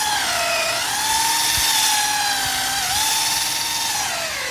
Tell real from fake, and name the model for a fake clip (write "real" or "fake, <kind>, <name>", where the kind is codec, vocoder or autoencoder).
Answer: real